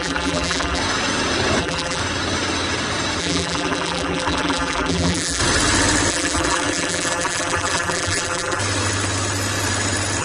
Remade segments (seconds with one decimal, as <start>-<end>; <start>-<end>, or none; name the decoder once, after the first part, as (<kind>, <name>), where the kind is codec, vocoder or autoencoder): 0.0-0.8 (vocoder, BigVGAN v2); 1.6-2.0; 3.2-5.4; 6.1-8.6